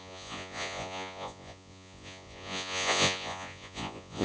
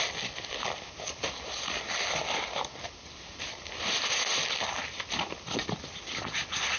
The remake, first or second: first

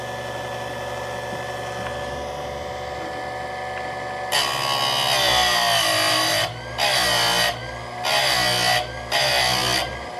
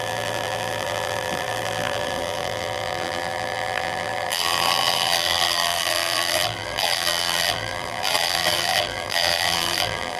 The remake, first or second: second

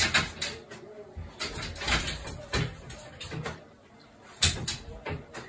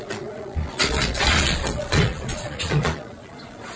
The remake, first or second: second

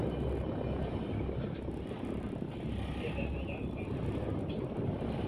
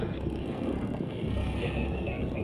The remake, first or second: second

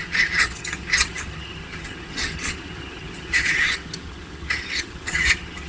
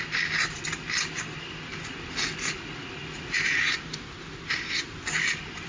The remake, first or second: first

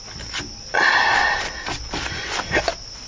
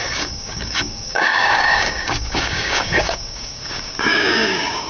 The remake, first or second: second